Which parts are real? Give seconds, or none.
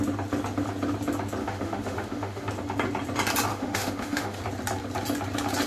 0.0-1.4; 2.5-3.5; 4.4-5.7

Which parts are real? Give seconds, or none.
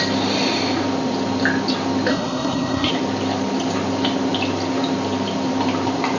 0.0-2.1; 2.9-6.2